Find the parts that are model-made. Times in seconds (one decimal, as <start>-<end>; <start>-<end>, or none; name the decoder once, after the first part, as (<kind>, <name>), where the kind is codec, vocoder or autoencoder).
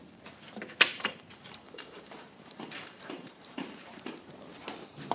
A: 0.9-4.0 (vocoder, BigVGAN v2)